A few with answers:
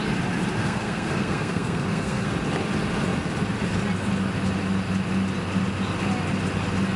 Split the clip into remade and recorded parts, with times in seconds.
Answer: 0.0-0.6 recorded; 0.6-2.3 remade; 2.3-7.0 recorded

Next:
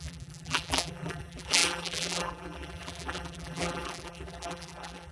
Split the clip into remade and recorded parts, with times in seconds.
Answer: 0.0-5.1 remade

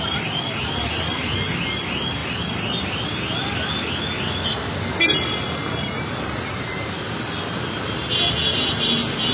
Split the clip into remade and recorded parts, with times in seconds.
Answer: 0.0-9.3 recorded

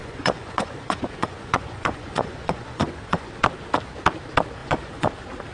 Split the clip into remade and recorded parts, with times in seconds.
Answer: 0.0-3.3 remade; 3.3-4.6 recorded; 4.6-5.1 remade; 5.1-5.5 recorded

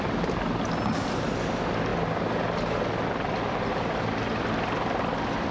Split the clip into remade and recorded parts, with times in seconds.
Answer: 0.0-5.5 recorded

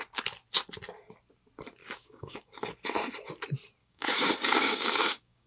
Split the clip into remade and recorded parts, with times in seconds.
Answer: 0.0-1.8 recorded; 1.8-2.7 remade; 2.7-3.8 recorded; 3.8-5.5 remade